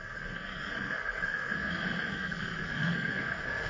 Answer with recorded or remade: remade